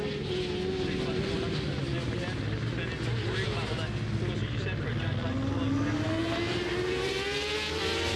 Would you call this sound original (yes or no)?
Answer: yes